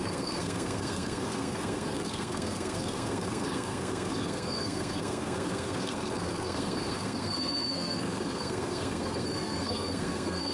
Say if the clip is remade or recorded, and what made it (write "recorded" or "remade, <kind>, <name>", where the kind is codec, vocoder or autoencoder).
remade, codec, SNAC